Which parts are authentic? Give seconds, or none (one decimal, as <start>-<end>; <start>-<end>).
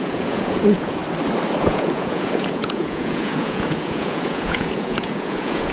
1.0-1.6